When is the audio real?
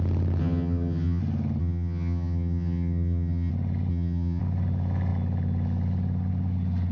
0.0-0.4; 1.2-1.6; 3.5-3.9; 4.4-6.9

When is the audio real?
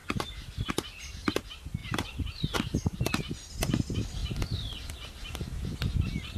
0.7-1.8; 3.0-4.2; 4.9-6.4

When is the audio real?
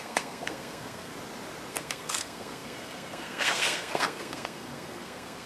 1.1-1.7